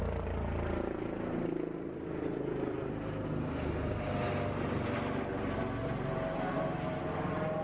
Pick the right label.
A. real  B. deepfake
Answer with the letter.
A